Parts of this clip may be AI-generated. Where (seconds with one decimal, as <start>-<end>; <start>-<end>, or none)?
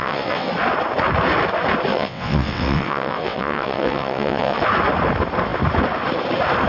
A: 0.0-0.5; 1.9-4.6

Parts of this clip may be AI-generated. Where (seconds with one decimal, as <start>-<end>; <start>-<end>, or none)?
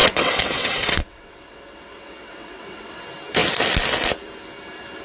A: 0.0-3.0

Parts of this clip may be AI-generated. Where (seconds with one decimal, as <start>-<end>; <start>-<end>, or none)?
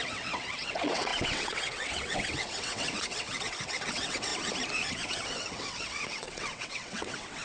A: 0.0-4.3; 4.9-7.4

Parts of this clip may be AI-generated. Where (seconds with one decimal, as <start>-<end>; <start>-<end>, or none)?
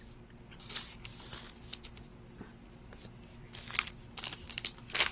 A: none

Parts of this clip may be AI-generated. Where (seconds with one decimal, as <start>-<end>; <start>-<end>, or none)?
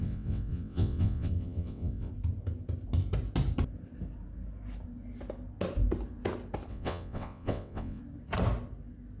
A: 0.0-2.1; 6.7-8.0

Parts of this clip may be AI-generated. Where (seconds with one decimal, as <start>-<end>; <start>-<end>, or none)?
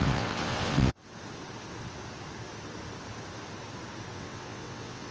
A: 0.0-1.0; 4.1-5.1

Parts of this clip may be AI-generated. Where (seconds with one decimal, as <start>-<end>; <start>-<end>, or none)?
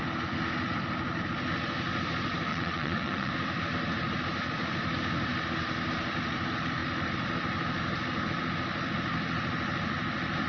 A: 2.5-3.3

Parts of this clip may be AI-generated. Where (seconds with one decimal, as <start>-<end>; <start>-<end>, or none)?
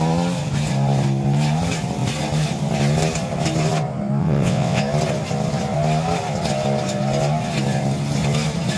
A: 4.2-4.8